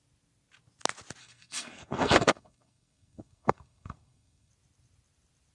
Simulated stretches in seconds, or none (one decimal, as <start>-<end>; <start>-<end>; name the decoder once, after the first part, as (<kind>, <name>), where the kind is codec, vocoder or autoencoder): 1.2-4.5 (codec, SNAC)